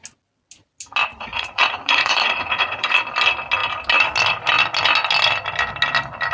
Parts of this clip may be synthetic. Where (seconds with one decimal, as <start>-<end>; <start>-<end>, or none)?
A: 1.1-3.0